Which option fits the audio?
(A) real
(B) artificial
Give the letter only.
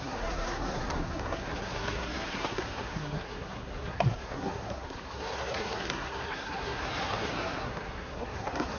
B